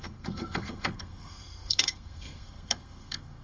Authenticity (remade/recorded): remade